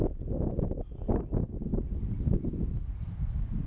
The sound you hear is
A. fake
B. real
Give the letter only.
B